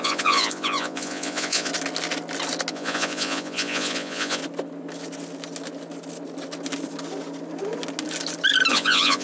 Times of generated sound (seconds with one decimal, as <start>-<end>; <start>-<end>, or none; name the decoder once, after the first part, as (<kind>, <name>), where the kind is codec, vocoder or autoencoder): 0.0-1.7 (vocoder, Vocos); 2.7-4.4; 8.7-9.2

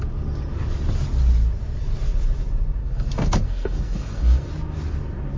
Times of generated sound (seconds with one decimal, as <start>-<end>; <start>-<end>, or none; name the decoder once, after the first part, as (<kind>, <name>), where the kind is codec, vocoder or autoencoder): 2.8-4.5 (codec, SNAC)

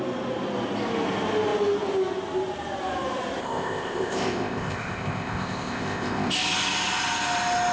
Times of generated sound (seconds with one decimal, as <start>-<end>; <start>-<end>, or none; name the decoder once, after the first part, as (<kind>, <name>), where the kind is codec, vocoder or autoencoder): 3.4-6.3 (codec, ZipCodec)

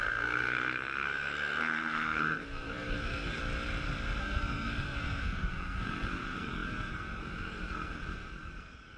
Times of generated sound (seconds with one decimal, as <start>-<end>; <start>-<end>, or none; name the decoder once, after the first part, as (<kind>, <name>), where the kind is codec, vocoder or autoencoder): 0.0-3.4 (codec, SNAC); 4.2-9.0

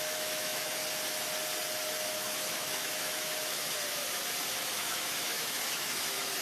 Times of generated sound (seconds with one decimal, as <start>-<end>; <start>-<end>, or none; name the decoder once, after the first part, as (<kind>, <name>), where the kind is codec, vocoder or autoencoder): 0.0-0.8 (autoencoder, DAC-VAE); 2.1-3.8; 4.5-6.4

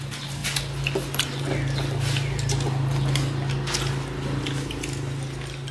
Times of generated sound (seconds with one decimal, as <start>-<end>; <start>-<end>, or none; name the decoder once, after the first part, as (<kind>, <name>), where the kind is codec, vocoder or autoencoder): none